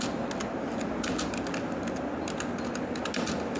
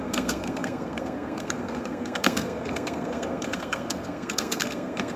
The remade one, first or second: second